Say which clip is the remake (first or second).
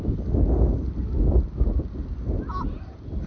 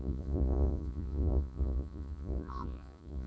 second